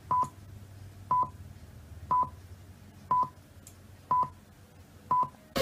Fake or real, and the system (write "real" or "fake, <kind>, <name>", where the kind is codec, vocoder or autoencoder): real